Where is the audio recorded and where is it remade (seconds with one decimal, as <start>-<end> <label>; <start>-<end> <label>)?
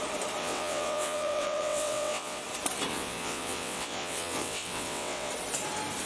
0.0-0.4 recorded; 0.4-2.4 remade; 2.4-2.9 recorded; 2.9-5.3 remade; 5.3-6.1 recorded